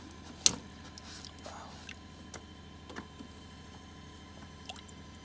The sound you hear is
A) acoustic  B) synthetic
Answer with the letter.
A